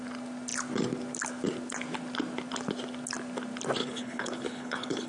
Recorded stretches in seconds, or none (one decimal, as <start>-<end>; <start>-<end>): 0.0-3.8